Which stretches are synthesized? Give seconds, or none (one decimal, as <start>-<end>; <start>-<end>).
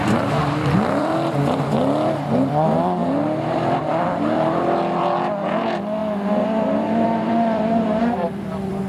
0.0-0.4; 1.0-8.9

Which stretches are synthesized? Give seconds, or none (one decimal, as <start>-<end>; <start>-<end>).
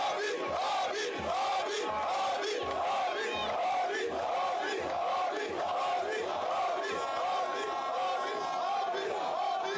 none